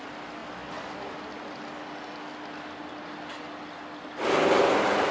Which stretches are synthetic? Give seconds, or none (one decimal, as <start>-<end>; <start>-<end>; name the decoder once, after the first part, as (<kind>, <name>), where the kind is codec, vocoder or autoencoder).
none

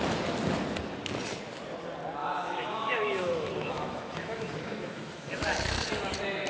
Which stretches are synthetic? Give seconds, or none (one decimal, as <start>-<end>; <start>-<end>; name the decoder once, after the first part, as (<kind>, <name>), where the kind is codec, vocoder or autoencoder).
2.2-5.9 (autoencoder, DAC-VAE)

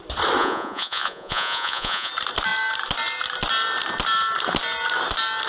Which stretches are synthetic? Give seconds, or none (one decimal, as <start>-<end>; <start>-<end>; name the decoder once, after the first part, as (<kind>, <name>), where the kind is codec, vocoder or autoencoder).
0.4-2.1 (vocoder, Vocos)

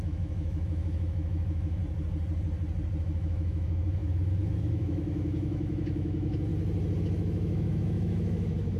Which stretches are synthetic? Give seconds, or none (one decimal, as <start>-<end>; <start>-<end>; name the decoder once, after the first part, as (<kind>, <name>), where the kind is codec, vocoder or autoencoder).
0.0-1.8 (autoencoder, DAC-VAE); 3.0-6.5; 7.0-8.8

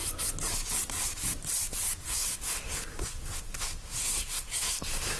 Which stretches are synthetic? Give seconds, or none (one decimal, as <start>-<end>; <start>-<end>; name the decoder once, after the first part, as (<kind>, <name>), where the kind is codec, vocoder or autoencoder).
2.0-5.2 (codec, SNAC)

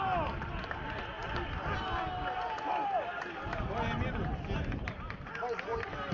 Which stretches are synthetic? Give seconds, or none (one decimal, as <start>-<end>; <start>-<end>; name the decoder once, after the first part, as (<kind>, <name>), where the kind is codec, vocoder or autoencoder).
none

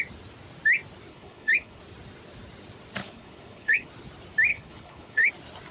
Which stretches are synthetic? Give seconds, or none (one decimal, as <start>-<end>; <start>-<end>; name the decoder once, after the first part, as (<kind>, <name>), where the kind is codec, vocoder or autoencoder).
1.1-1.8 (codec, HILCodec); 3.0-3.9; 4.5-5.3